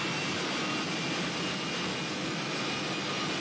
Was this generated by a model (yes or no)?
no